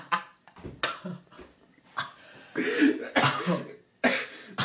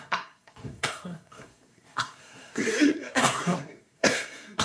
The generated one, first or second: second